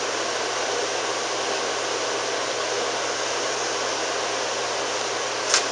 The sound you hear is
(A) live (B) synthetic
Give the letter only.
A